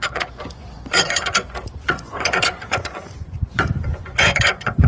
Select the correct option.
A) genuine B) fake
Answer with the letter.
B